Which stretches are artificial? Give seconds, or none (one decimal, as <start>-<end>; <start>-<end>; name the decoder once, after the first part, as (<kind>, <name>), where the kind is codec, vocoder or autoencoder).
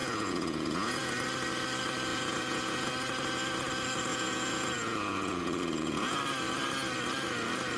0.0-1.1 (vocoder, Vocos); 2.1-2.9; 4.1-6.2